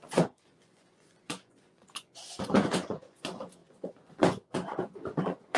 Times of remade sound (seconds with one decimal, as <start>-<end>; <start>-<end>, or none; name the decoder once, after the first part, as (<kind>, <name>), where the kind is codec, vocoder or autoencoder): 0.0-5.6 (vocoder, Vocos)